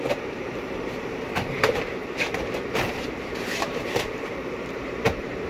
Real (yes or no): no